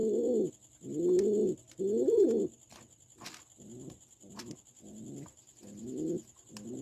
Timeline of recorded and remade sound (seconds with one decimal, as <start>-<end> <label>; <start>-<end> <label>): 0.0-6.8 recorded